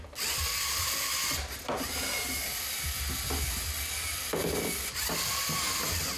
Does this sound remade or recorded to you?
recorded